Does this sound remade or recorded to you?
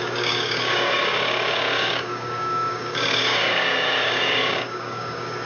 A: remade